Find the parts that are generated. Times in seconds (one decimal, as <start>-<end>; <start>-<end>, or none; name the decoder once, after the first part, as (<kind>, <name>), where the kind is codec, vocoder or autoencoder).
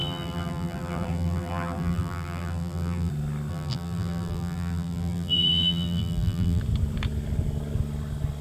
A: 0.0-3.1 (vocoder, BigVGAN v2); 3.5-6.6